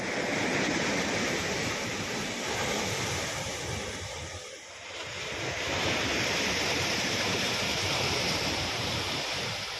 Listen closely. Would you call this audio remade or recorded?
remade